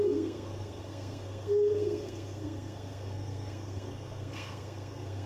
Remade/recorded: remade